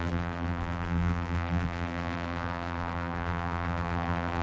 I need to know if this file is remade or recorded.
remade